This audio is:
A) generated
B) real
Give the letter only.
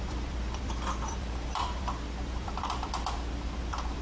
A